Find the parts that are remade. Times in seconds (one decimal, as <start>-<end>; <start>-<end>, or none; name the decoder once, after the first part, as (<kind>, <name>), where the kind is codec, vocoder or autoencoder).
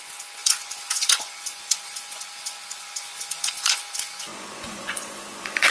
0.0-5.7 (vocoder, Vocos)